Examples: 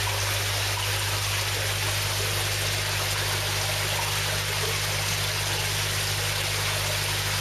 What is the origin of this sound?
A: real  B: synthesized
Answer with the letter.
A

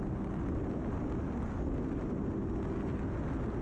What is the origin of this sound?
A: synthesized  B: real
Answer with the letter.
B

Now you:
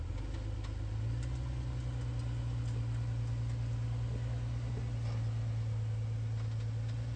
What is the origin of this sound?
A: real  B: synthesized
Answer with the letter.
A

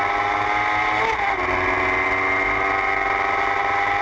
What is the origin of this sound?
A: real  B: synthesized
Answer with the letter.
A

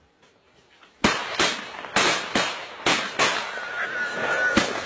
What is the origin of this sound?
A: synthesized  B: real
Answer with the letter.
B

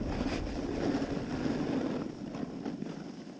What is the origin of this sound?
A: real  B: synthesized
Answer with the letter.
A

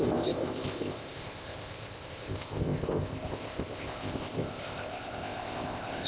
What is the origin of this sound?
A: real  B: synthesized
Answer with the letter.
B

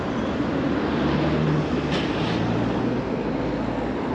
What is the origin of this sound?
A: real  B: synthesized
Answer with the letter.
A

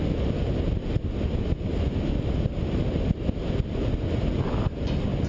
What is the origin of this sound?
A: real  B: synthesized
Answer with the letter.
A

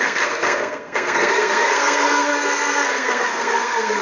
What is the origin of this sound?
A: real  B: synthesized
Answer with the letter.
B